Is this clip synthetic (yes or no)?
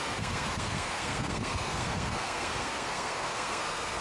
yes